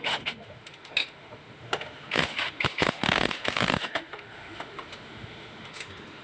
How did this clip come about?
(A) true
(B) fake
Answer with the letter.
B